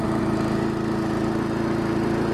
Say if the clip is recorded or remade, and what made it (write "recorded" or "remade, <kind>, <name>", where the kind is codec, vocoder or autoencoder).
recorded